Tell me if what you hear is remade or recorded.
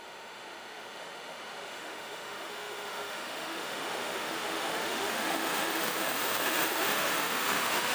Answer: remade